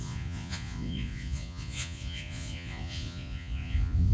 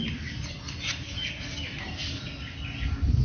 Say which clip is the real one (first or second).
second